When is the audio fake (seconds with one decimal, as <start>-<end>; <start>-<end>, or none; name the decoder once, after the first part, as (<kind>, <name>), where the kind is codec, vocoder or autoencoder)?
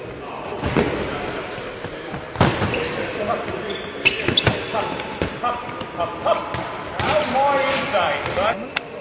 none